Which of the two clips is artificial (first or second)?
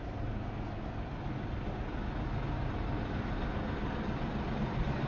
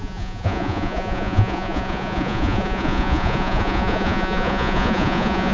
second